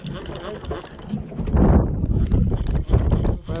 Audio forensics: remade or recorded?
recorded